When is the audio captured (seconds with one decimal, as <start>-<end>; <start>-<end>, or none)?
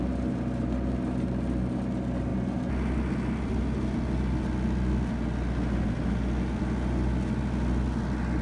0.0-8.4